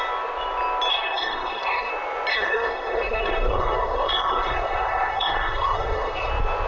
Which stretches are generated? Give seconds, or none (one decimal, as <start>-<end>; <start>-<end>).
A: 0.9-1.9; 2.3-6.3